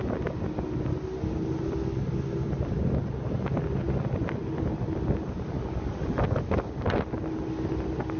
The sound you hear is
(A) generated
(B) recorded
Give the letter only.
B